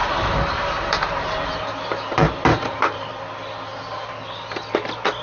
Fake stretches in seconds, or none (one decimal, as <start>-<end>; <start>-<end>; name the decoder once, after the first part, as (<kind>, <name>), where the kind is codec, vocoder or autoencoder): 0.0-3.1 (vocoder, BigVGAN v2)